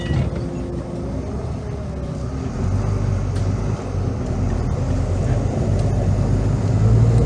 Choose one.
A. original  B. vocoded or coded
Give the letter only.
A